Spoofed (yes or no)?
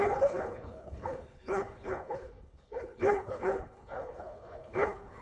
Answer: yes